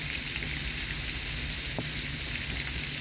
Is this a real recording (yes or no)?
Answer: yes